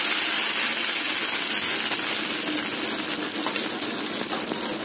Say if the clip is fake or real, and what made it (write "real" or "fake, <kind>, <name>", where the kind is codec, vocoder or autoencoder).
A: real